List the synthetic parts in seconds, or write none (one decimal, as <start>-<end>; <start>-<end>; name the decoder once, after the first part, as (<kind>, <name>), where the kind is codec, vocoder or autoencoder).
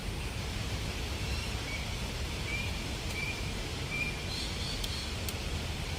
0.0-3.6 (vocoder, BigVGAN v2); 5.4-6.0